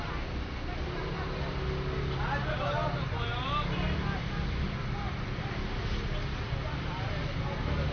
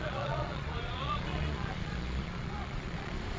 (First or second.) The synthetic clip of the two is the second